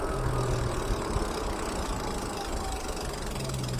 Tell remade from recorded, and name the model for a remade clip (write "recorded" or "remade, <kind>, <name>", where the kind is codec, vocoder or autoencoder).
recorded